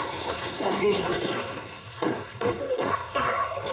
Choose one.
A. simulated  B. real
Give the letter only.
A